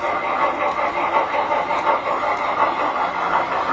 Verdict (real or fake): real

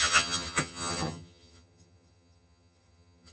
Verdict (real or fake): fake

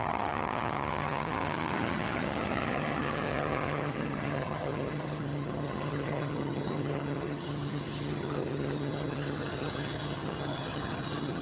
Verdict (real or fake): fake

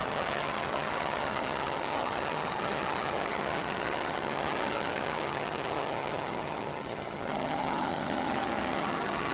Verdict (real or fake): fake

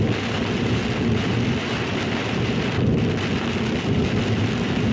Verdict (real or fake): real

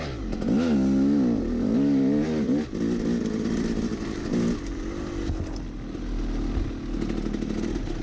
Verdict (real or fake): real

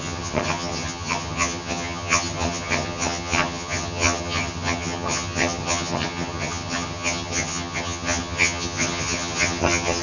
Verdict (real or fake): fake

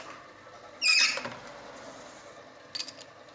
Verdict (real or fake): real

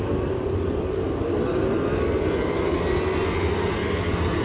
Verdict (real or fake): real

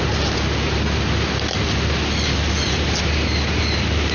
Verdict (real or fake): real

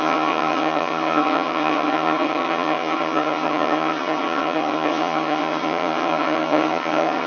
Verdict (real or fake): fake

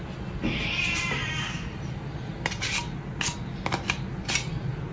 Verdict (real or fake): real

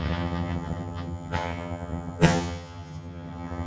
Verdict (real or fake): fake